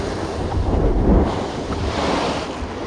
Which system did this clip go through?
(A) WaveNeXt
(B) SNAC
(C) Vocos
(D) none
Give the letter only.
D